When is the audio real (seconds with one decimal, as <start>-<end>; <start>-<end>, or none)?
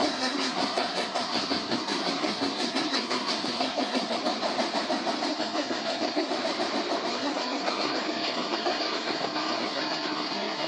4.2-5.3; 6.3-7.1